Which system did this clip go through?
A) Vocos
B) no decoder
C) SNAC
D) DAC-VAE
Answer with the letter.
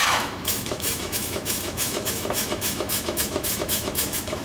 D